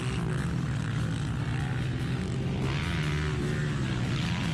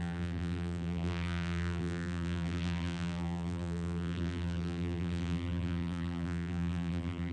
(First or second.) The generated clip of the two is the second